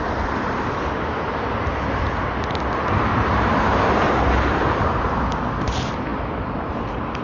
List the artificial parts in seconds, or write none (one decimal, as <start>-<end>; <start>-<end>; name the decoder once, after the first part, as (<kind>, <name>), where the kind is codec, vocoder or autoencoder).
3.1-5.4 (vocoder, BigVGAN v2)